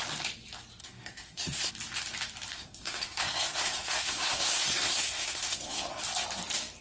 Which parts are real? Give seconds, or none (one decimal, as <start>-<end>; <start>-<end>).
0.0-0.8; 1.7-2.5; 6.0-6.8

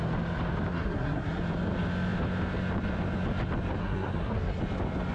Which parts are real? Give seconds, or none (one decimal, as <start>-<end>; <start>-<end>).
0.0-0.7; 1.4-3.8; 4.6-5.1